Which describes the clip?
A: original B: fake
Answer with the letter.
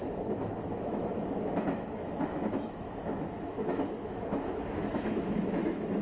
B